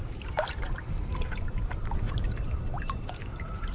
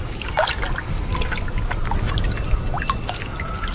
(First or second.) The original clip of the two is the second